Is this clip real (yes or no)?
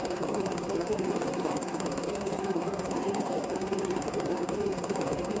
no